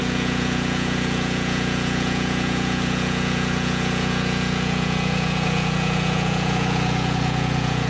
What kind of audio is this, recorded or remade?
remade